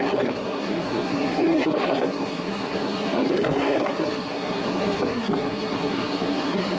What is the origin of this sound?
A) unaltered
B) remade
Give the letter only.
B